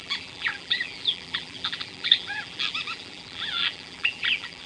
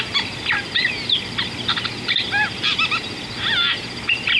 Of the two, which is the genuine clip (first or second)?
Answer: second